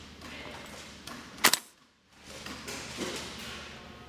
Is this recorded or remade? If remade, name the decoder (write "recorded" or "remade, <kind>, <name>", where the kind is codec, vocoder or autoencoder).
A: recorded